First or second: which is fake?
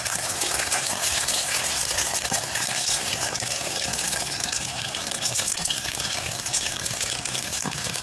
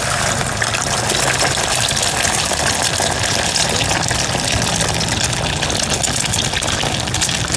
first